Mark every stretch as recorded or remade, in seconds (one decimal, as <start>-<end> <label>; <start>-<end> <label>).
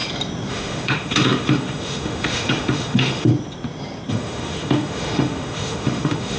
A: 0.0-0.5 recorded; 0.5-3.3 remade; 3.3-4.1 recorded; 4.1-6.4 remade